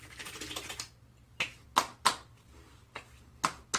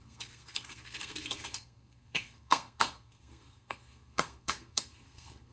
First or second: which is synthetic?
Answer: second